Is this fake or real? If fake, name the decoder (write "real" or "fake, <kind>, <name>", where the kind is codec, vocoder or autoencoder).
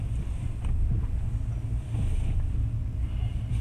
real